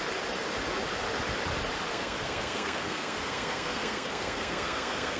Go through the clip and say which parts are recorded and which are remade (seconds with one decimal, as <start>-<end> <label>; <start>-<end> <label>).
0.0-1.9 recorded; 1.9-5.2 remade